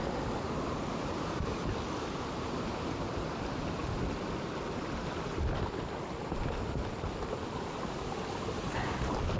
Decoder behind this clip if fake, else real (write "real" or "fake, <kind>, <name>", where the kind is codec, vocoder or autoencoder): real